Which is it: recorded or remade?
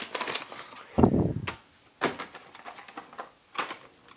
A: recorded